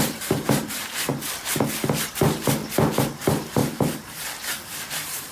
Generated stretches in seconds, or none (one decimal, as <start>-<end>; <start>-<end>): 0.0-1.1; 2.1-2.6; 3.1-5.3